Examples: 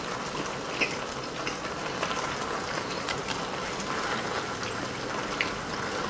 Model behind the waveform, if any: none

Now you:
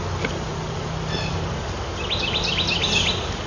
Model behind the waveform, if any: none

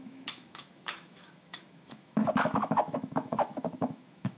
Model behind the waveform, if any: autoencoder, DAC-VAE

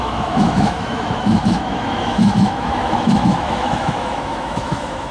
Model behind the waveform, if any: autoencoder, DAC-VAE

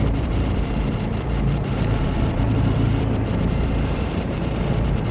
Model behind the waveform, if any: vocoder, BigVGAN v2